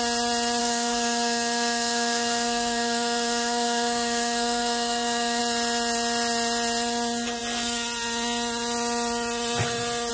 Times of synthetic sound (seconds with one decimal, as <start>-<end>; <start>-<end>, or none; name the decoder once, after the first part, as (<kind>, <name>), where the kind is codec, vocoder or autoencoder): 0.6-5.4 (codec, SNAC)